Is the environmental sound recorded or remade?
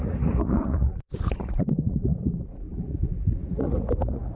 remade